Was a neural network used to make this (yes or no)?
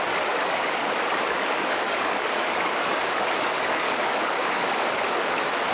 yes